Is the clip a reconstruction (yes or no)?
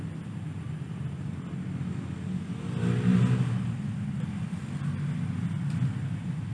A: no